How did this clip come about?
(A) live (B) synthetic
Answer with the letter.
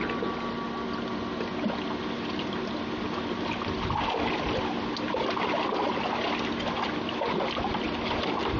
A